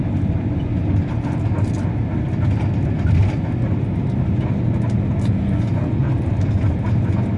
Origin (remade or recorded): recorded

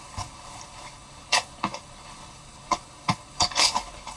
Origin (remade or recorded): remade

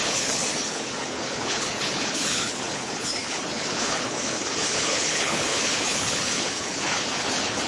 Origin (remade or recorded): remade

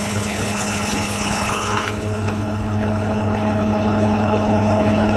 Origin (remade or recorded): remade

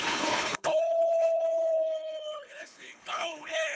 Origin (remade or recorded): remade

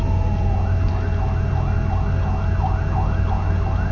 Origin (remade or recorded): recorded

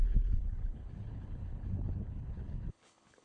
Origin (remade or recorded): remade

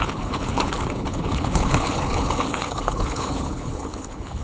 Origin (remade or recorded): remade